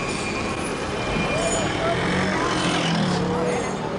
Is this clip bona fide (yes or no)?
yes